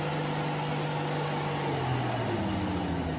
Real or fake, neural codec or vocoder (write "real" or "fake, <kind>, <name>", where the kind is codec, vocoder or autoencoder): real